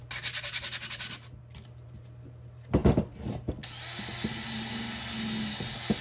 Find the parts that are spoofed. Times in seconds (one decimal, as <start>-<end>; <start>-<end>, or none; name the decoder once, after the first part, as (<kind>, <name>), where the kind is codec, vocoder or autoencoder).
none